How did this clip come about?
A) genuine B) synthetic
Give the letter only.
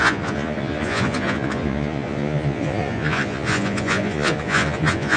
B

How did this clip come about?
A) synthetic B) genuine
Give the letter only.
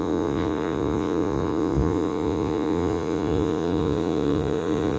A